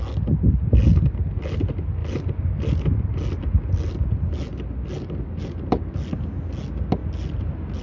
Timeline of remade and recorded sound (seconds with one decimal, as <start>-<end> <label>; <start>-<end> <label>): 0.0-7.8 recorded